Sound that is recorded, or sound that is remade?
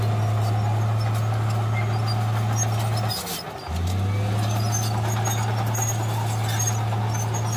recorded